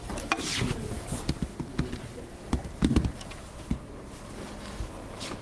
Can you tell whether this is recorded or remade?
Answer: recorded